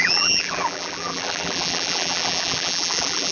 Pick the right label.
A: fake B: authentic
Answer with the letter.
A